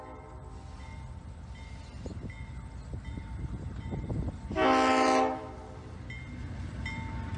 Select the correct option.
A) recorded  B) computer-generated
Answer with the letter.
A